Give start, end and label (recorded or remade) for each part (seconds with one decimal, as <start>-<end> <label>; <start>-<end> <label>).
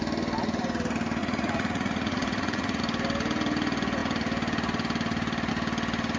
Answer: 0.0-1.2 recorded; 1.2-2.8 remade; 2.8-6.2 recorded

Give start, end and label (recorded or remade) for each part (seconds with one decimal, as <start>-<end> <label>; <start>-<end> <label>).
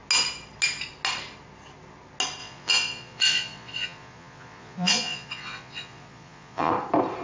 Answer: 0.0-2.4 recorded; 2.4-6.7 remade; 6.7-7.2 recorded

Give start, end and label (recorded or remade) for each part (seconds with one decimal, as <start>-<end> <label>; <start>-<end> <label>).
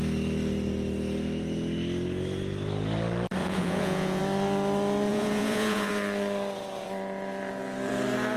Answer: 0.0-3.4 recorded; 3.4-4.2 remade; 4.2-5.1 recorded; 5.1-5.9 remade; 5.9-8.4 recorded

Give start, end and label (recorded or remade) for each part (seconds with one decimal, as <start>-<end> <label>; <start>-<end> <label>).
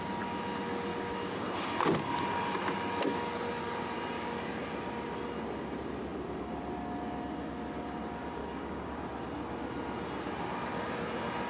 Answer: 0.0-0.9 recorded; 0.9-1.4 remade; 1.4-8.4 recorded; 8.4-9.0 remade; 9.0-11.5 recorded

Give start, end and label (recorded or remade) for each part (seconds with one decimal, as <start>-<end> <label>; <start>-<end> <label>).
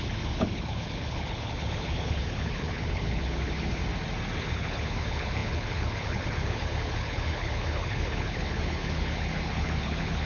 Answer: 0.0-3.8 remade; 3.8-4.4 recorded; 4.4-10.2 remade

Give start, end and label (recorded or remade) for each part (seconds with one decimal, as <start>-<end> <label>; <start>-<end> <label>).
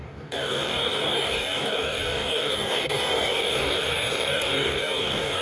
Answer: 0.0-5.4 remade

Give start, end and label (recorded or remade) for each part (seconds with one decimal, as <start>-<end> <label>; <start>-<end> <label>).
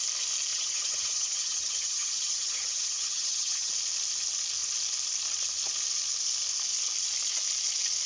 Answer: 0.0-0.5 recorded; 0.5-3.7 remade; 3.7-8.1 recorded